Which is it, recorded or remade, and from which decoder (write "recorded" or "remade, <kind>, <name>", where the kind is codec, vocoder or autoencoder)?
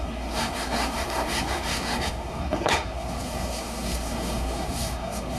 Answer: remade, codec, SNAC